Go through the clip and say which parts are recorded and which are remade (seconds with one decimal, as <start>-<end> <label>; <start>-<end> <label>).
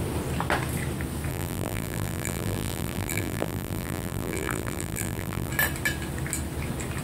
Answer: 0.0-1.3 recorded; 1.3-5.5 remade; 5.5-7.0 recorded